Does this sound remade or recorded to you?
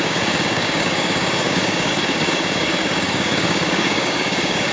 remade